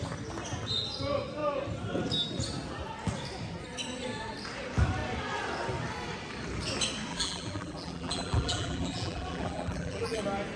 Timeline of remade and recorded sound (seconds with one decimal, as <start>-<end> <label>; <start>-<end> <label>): 0.0-7.1 recorded; 7.1-10.2 remade; 10.2-10.6 recorded